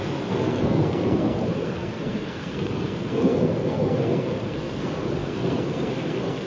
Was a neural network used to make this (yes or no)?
yes